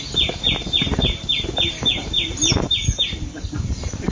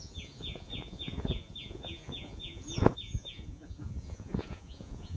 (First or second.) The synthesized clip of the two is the second